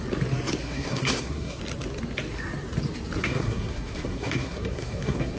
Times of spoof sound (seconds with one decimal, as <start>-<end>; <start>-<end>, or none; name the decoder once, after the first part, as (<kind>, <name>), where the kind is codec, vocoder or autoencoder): 0.6-1.6 (codec, SNAC); 3.2-5.4